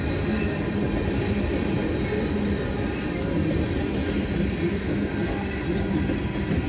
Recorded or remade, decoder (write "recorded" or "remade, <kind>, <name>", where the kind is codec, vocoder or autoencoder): recorded